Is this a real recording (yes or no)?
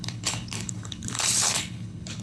no